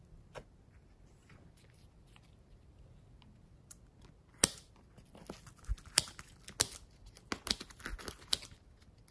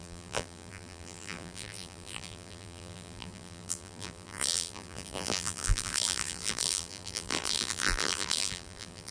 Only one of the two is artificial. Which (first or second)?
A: second